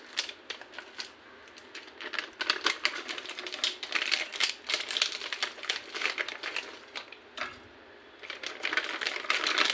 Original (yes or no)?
yes